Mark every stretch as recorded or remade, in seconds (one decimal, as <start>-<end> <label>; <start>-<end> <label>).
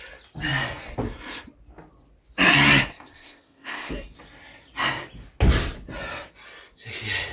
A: 0.0-2.9 recorded; 2.9-3.9 remade; 3.9-7.3 recorded